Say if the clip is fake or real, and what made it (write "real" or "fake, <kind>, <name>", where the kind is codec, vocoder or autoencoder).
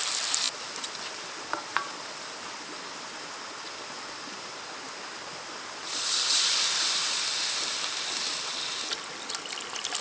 real